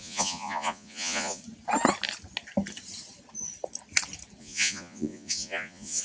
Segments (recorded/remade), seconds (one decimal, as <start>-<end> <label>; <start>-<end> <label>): 0.0-1.4 remade; 1.4-4.4 recorded; 4.4-6.0 remade